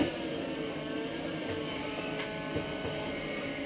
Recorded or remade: recorded